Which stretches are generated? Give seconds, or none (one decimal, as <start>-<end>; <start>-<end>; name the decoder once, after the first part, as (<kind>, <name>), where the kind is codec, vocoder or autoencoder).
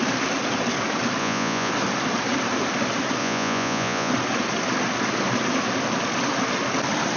1.2-1.7 (vocoder, Vocos); 3.2-4.1